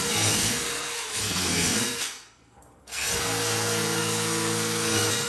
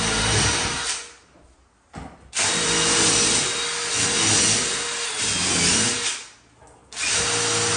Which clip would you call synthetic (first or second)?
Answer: first